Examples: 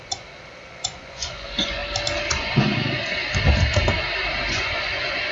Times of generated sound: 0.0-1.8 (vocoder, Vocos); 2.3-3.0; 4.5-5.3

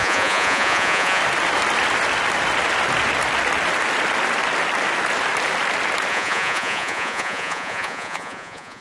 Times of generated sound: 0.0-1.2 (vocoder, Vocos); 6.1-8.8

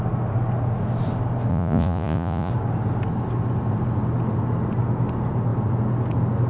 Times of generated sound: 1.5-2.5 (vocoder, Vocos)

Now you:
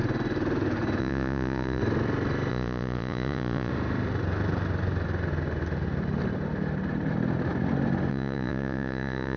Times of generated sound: 1.0-1.8 (vocoder, Vocos); 2.5-3.7; 8.1-9.4

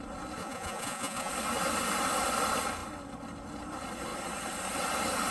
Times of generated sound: 0.4-1.3 (vocoder, Vocos)

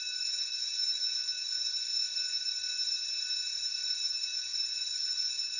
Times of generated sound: none

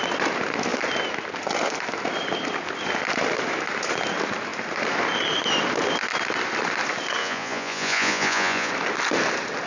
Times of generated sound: 7.2-8.7 (vocoder, Vocos)